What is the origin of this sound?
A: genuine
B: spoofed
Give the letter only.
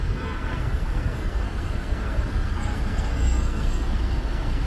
B